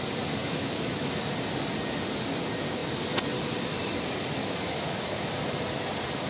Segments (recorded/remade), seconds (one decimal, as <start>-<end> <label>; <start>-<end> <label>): 0.0-0.4 recorded; 0.4-1.1 remade; 1.1-4.4 recorded; 4.4-5.3 remade; 5.3-6.3 recorded